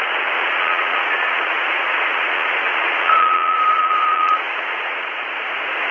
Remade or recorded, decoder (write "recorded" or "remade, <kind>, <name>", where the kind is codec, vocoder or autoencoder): remade, vocoder, Vocos